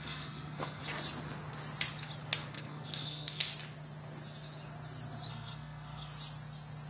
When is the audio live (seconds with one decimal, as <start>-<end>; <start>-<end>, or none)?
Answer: 0.8-2.5; 3.5-5.3; 6.1-6.9